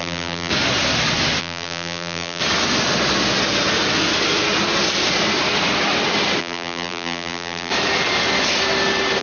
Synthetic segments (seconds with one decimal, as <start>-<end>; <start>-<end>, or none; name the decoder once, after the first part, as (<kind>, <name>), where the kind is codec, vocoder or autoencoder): 0.0-0.5 (vocoder, BigVGAN v2); 1.4-2.4; 6.4-7.7